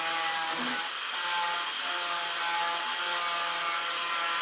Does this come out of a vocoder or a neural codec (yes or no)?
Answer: no